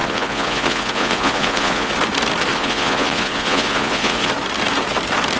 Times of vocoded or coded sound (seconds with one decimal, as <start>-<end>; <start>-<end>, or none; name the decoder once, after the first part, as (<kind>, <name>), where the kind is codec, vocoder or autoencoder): 0.0-1.9 (vocoder, Vocos); 2.5-4.3